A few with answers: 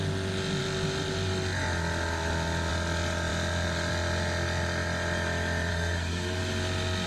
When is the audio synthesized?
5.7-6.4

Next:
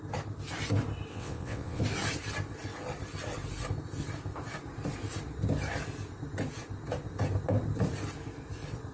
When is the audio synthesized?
1.1-1.8

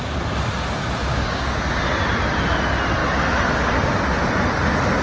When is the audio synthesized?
1.1-1.6

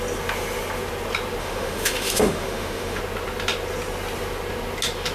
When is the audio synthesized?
1.4-3.0

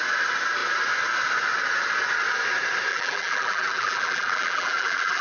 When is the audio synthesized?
2.9-5.2